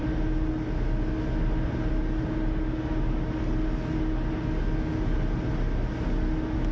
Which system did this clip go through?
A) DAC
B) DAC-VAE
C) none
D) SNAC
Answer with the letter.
C